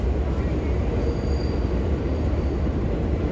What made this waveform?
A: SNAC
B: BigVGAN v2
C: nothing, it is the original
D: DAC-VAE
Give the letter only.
C